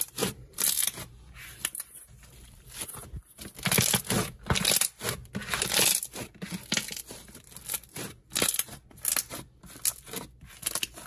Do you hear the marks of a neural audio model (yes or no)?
no